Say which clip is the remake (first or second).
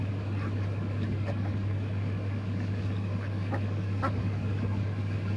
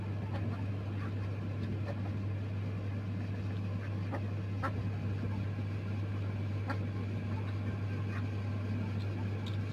first